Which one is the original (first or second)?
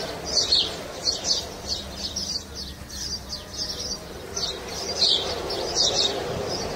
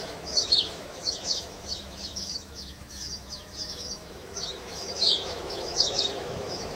first